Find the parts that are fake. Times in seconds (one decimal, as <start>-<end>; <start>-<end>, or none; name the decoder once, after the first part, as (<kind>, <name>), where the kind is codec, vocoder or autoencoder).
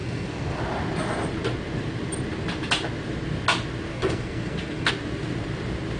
0.0-0.6 (codec, SNAC); 3.9-4.9